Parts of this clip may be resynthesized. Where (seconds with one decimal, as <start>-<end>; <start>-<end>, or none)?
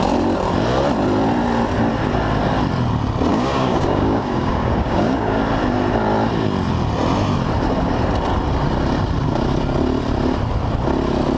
3.3-5.4